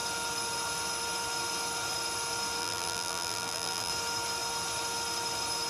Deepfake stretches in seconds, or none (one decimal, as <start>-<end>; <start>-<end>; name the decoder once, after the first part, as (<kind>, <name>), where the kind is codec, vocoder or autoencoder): 2.6-3.9 (vocoder, BigVGAN v2)